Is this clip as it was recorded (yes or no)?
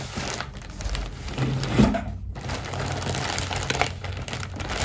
yes